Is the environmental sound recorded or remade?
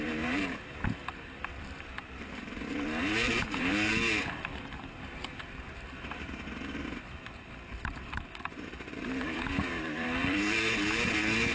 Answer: remade